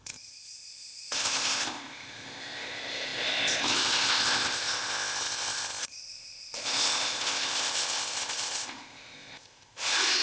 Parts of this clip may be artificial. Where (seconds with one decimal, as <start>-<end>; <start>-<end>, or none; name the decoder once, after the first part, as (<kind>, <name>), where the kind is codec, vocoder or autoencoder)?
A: 0.0-10.2 (codec, ZipCodec)

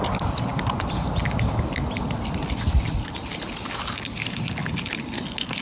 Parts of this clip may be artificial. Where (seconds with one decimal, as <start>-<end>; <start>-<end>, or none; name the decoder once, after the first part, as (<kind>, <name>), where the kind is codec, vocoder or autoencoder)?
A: none

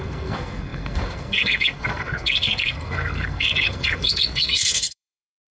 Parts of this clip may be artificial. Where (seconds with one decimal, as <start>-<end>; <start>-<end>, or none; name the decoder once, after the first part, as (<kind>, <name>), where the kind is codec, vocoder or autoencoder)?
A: 0.0-5.5 (codec, SNAC)

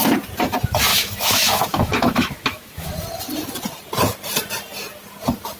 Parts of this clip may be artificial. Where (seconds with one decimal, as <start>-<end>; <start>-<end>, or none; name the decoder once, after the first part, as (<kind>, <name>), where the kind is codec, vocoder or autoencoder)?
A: 0.9-2.9 (autoencoder, DAC-VAE)

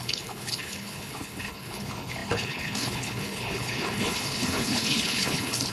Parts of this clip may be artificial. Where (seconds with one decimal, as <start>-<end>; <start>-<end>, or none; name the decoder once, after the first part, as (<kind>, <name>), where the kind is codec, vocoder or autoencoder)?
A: 0.0-5.7 (codec, HILCodec)